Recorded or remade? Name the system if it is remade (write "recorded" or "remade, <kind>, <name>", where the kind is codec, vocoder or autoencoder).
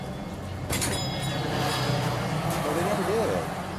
recorded